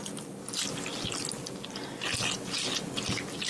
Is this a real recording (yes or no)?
yes